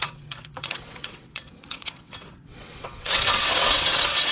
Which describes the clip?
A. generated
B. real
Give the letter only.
A